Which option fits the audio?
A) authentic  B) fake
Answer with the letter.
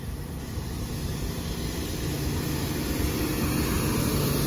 A